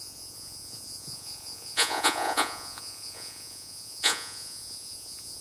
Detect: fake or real fake